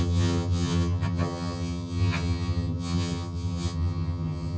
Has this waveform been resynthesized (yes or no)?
yes